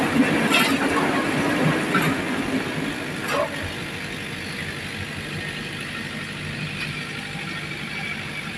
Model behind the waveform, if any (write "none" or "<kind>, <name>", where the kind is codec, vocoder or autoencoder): none